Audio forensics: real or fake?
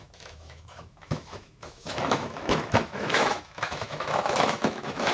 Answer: fake